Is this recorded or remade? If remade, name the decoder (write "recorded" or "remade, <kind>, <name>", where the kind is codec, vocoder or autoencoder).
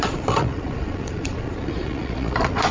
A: remade, vocoder, Vocos